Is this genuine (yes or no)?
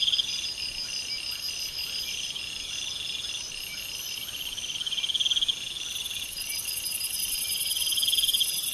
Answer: yes